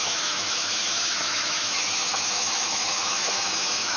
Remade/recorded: remade